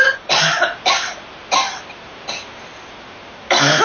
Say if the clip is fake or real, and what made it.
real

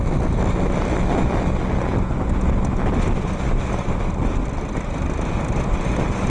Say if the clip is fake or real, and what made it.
real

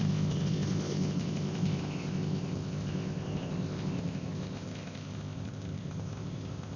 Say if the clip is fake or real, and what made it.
fake, codec, ZipCodec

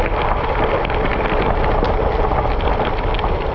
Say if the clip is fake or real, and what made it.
real